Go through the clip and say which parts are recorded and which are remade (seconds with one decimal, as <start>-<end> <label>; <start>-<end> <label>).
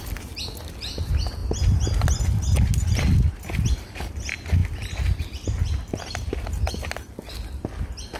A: 0.0-8.2 recorded